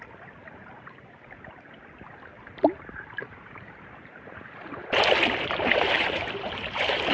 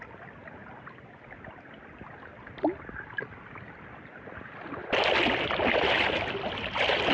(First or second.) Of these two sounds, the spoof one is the first